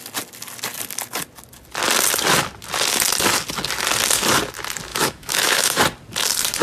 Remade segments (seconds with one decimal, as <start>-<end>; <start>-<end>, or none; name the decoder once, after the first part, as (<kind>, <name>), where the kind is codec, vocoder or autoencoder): 4.9-5.8 (autoencoder, DAC-VAE)